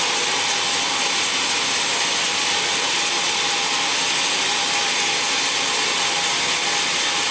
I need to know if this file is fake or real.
real